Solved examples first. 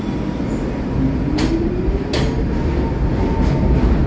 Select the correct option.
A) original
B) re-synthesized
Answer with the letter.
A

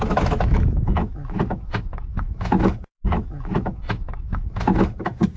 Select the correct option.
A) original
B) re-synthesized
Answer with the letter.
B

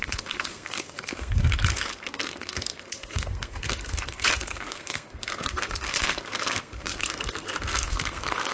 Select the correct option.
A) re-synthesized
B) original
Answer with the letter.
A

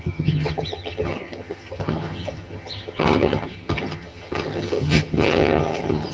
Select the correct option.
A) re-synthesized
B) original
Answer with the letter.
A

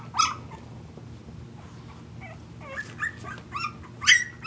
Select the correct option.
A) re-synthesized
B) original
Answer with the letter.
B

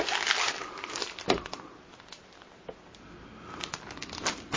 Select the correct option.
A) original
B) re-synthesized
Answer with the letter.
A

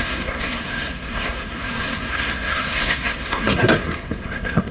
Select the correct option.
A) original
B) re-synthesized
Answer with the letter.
B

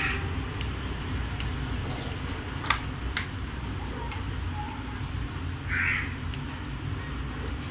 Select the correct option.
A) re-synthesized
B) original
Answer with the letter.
B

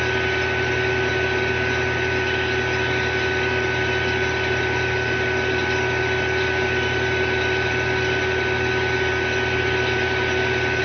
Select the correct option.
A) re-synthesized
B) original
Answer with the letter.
B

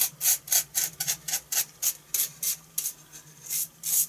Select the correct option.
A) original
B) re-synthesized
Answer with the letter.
A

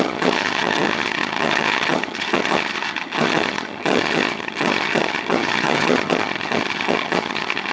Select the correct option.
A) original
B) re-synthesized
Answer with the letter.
B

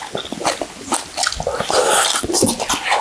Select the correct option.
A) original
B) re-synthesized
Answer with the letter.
A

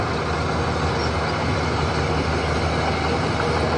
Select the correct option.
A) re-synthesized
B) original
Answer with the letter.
B